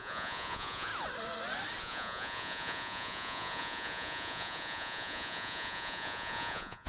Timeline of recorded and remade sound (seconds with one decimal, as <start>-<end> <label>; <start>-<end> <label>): 0.0-0.9 remade; 0.9-1.8 recorded; 1.8-6.9 remade